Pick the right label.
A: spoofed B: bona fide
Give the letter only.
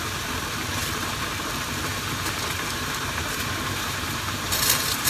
A